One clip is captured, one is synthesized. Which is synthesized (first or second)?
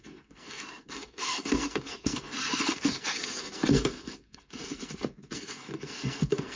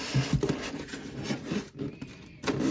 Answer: first